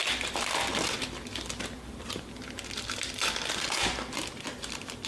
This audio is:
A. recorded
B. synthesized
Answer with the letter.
B